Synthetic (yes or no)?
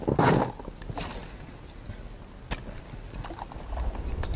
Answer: no